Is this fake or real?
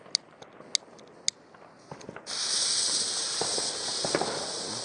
real